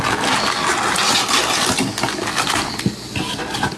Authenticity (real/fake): real